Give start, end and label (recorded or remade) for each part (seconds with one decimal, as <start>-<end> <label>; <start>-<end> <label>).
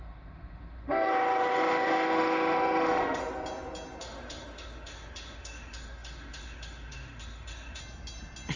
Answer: 0.0-3.2 remade; 3.2-4.0 recorded; 4.0-7.8 remade; 7.8-8.6 recorded